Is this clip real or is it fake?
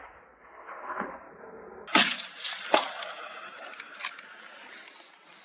real